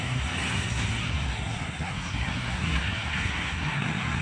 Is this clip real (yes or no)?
no